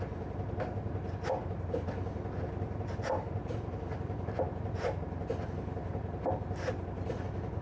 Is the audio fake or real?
real